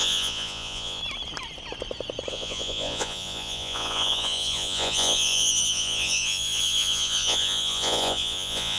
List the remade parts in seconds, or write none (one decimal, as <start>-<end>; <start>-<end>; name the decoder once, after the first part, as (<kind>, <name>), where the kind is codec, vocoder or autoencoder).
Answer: 0.0-1.0 (vocoder, Vocos); 2.3-8.8